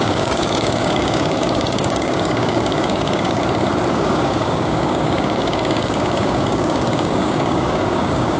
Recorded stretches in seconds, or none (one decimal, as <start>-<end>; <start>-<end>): 3.4-3.9